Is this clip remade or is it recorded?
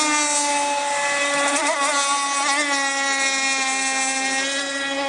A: recorded